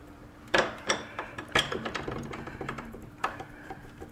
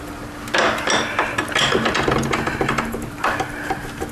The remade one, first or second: first